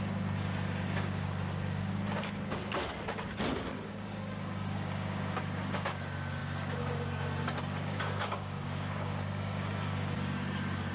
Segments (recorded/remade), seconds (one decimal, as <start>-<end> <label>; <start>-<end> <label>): 0.0-2.9 remade; 2.9-3.5 recorded; 3.5-10.9 remade